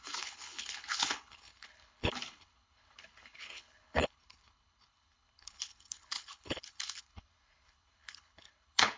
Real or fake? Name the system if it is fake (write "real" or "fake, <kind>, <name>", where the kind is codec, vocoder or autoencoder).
fake, codec, HILCodec